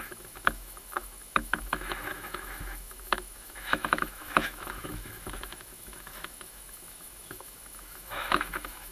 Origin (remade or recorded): remade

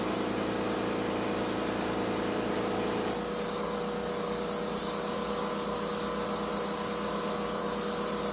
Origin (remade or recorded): recorded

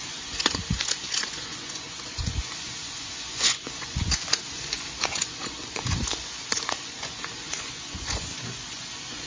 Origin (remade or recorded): remade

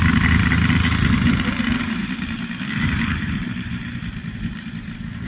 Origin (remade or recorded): remade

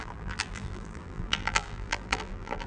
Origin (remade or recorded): remade